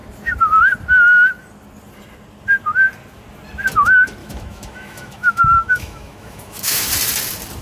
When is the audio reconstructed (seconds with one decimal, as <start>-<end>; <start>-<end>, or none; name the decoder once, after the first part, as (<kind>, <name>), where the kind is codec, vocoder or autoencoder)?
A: 4.2-6.9 (autoencoder, DAC-VAE)